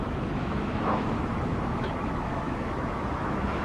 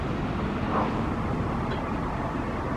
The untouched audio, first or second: second